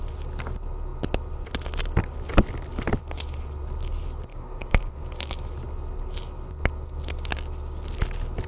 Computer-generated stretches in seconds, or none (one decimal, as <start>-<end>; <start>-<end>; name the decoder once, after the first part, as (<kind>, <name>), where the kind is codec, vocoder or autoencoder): 4.3-5.4 (codec, DAC)